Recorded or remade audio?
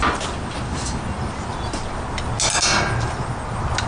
recorded